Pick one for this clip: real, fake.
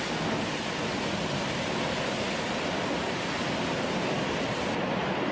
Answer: real